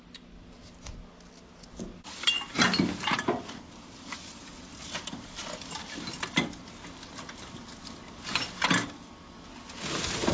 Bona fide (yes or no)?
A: yes